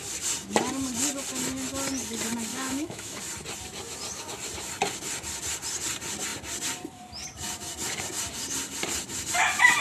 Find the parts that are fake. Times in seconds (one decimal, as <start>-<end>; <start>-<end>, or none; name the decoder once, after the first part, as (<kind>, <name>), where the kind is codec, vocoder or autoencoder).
2.5-3.2 (autoencoder, DAC-VAE)